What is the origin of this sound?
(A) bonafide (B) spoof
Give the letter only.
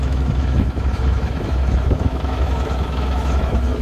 B